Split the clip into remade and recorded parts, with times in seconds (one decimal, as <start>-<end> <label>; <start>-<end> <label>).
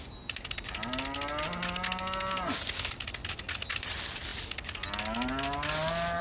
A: 0.0-6.2 recorded